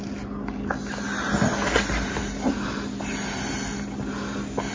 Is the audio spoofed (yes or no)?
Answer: no